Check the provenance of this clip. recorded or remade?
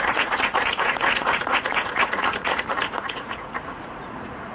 remade